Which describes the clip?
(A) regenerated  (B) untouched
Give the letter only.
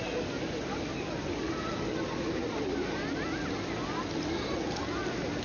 B